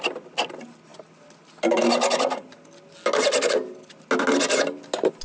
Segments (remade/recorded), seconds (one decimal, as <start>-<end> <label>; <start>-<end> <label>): 0.0-5.2 recorded

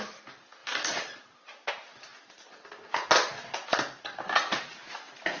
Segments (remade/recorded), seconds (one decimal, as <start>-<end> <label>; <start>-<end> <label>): 0.0-5.4 recorded

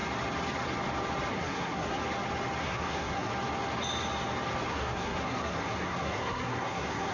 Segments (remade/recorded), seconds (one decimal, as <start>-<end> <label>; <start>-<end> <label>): 0.0-1.3 recorded; 1.3-2.0 remade; 2.0-2.6 recorded; 2.6-3.3 remade; 3.3-4.7 recorded; 4.7-7.1 remade

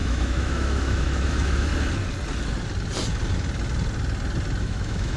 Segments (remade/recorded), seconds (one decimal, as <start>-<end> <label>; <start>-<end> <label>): 0.0-1.7 remade; 1.7-4.6 recorded; 4.6-5.2 remade

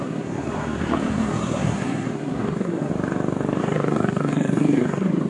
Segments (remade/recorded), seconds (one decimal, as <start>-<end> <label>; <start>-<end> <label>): 0.0-2.9 remade; 2.9-3.6 recorded; 3.6-5.3 remade

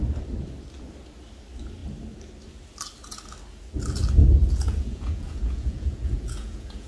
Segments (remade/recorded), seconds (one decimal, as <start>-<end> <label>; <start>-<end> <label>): 0.0-4.2 recorded; 4.2-6.9 remade